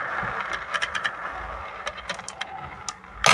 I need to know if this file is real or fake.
real